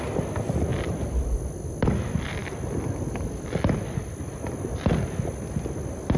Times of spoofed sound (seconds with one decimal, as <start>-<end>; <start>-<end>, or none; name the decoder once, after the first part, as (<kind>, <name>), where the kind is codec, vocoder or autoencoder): none

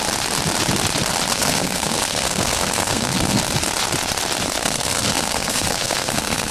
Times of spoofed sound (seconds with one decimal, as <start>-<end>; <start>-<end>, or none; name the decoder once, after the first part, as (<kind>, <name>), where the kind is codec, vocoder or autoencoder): 1.3-3.4 (codec, SNAC); 4.6-6.5

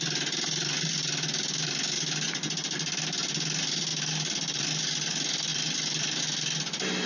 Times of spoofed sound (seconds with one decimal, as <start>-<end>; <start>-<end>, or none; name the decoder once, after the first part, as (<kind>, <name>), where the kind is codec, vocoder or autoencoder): none

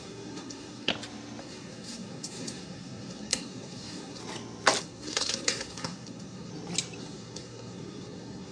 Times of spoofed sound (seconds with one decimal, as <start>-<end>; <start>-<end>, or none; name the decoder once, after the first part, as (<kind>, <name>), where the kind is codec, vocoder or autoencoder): 0.0-0.9 (codec, SNAC); 1.4-4.2; 4.8-6.5; 7.0-8.5

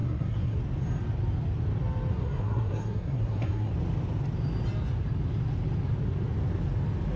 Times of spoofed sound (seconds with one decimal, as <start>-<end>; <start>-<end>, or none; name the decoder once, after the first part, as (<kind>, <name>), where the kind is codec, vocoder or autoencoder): 0.0-0.6 (codec, SNAC); 2.1-3.7

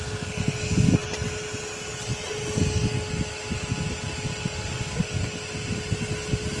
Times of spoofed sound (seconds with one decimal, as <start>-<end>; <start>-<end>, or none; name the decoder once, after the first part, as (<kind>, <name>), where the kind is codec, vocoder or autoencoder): none

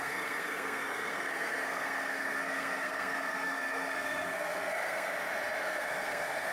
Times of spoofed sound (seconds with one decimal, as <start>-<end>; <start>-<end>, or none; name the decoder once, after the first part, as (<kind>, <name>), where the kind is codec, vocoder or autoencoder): 0.0-5.1 (codec, SNAC); 5.6-6.5